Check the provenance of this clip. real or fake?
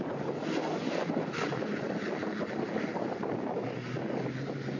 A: real